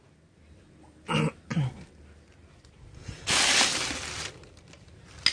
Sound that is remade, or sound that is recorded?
recorded